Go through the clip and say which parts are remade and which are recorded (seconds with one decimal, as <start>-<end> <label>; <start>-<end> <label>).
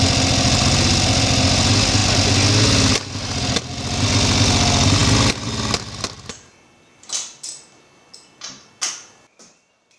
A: 0.0-10.0 recorded